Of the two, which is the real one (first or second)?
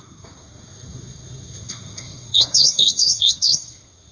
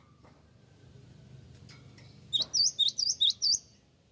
second